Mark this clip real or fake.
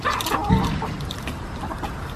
real